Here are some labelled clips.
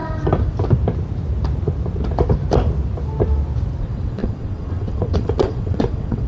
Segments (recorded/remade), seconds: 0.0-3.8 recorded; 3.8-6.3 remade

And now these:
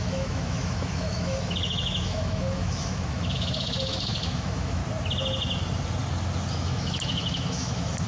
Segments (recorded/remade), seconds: 0.0-4.8 remade; 4.8-6.5 recorded; 6.5-8.1 remade